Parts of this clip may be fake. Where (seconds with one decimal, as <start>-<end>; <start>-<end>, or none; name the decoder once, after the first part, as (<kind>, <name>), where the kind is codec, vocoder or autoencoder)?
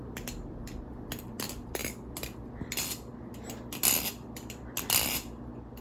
none